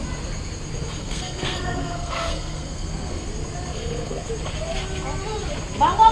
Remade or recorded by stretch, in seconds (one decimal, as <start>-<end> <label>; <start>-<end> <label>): 0.0-1.0 recorded; 1.0-3.3 remade; 3.3-3.7 recorded; 3.7-4.3 remade; 4.3-6.1 recorded